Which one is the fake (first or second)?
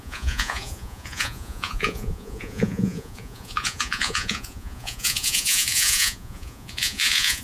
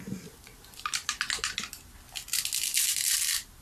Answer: first